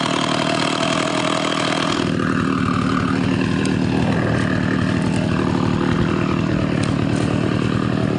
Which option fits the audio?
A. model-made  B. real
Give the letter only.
B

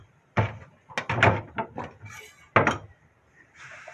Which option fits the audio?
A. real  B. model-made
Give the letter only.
A